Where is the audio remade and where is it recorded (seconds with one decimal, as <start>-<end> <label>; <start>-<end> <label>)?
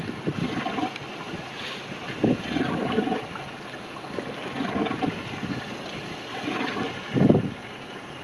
0.0-1.0 recorded; 1.0-2.0 remade; 2.0-8.2 recorded